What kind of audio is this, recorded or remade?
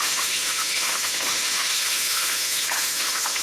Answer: remade